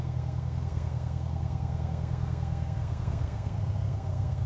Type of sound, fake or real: fake